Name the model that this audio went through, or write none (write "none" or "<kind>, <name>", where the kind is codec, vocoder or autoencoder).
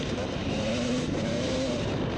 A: vocoder, BigVGAN v2